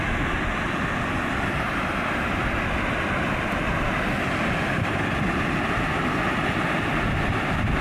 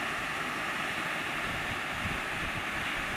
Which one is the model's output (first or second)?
first